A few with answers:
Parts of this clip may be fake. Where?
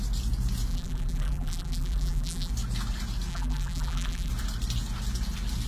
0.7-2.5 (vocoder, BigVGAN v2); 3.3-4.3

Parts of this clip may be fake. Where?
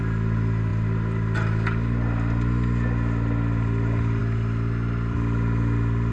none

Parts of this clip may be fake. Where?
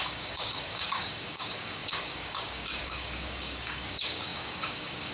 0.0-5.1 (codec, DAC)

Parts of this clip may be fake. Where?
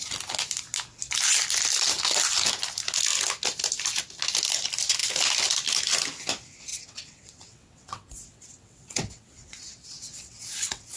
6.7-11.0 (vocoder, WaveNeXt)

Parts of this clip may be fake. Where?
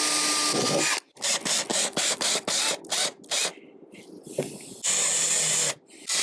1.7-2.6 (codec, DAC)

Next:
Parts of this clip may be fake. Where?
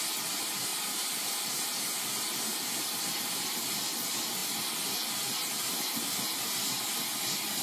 0.7-1.5 (vocoder, BigVGAN v2); 2.5-3.8